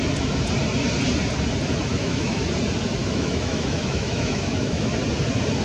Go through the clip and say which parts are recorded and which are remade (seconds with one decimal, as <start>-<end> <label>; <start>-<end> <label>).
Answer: 0.0-1.9 recorded; 1.9-2.4 remade; 2.4-3.0 recorded; 3.0-4.9 remade; 4.9-5.6 recorded